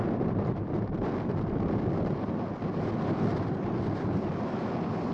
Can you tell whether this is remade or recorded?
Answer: recorded